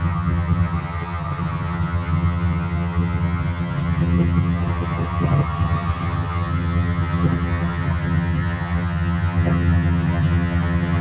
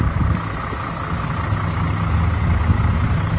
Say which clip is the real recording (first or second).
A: second